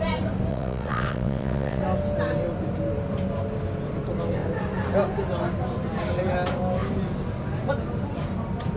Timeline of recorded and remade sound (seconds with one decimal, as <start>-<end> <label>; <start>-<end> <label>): 0.0-0.5 recorded; 0.5-1.8 remade; 1.8-8.8 recorded